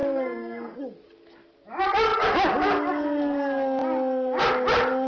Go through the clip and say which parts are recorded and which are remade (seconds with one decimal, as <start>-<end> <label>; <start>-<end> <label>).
0.0-0.8 remade; 0.8-5.1 recorded